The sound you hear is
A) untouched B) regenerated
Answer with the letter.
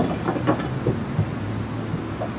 A